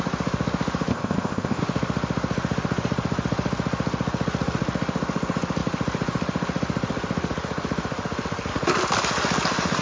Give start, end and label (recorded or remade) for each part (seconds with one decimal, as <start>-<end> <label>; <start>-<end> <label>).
0.0-0.9 recorded; 0.9-1.6 remade; 1.6-9.8 recorded